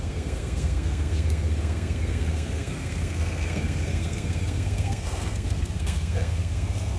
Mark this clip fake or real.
fake